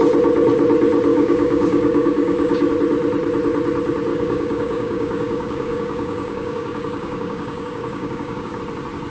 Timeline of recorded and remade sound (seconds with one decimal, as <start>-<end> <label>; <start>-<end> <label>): 0.0-1.1 recorded; 1.1-2.7 remade; 2.7-4.1 recorded; 4.1-8.6 remade; 8.6-9.1 recorded